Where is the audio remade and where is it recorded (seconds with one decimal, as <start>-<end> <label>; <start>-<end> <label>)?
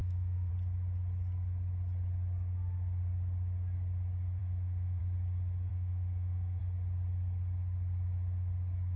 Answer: 0.0-0.5 remade; 0.5-4.4 recorded; 4.4-5.0 remade; 5.0-5.7 recorded; 5.7-6.6 remade; 6.6-9.0 recorded